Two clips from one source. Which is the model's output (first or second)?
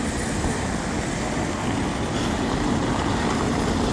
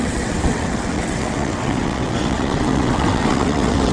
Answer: second